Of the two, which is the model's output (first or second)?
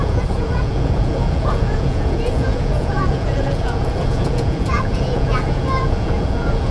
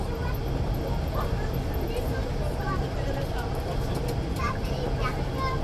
first